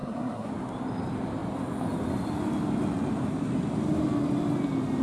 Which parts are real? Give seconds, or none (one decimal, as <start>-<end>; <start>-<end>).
0.5-5.0